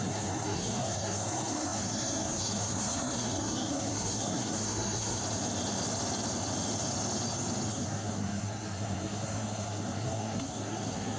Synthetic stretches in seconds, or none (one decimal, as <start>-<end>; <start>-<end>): 0.0-5.2; 7.7-11.2